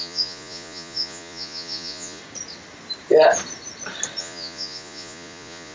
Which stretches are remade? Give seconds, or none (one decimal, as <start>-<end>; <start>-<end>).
0.0-2.2; 4.2-5.7